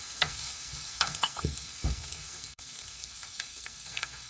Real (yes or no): no